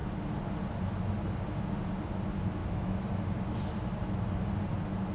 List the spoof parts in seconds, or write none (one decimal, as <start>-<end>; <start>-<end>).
2.6-3.1